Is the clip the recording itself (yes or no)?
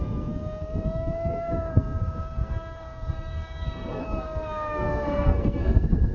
no